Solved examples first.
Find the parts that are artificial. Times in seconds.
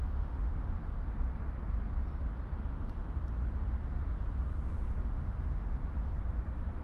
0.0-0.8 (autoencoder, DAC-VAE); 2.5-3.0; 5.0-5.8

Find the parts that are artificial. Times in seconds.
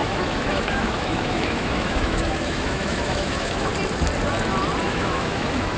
0.0-3.7 (autoencoder, DAC-VAE); 4.8-5.8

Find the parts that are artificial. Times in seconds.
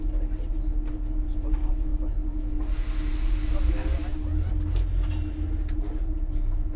none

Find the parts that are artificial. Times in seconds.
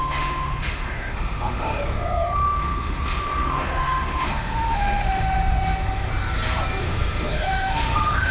0.0-6.1 (autoencoder, DAC-VAE); 6.8-8.3